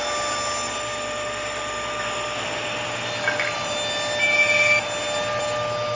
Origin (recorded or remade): recorded